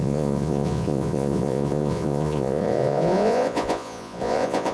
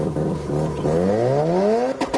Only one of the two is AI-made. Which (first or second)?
first